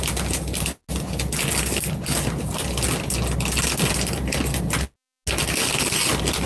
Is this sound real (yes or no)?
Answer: yes